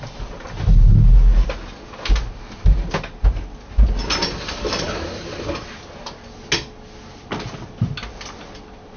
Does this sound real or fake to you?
real